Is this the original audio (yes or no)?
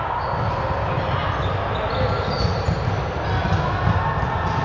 yes